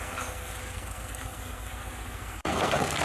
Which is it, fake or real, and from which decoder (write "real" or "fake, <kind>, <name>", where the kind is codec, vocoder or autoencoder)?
fake, codec, SNAC